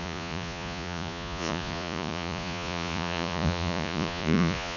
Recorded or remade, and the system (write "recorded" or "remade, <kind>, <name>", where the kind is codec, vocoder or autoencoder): remade, vocoder, Vocos